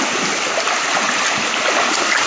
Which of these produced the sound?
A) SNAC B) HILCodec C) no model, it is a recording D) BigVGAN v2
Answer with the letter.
C